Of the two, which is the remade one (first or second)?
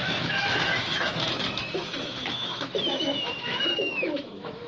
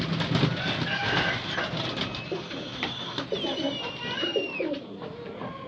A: first